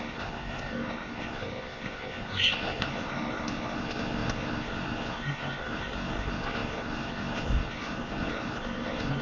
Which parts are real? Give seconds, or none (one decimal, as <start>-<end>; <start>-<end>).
none